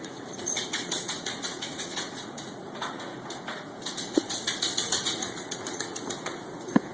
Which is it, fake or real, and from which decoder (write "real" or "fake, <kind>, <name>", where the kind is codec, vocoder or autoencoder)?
fake, vocoder, Vocos